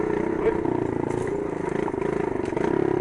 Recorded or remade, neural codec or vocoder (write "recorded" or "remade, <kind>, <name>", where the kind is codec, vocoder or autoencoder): recorded